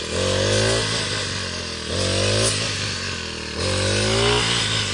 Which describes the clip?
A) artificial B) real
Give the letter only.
B